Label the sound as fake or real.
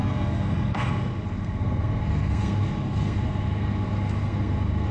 fake